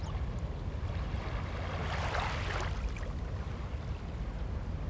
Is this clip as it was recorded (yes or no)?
yes